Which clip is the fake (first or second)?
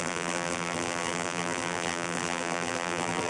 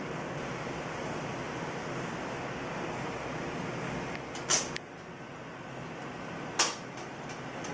first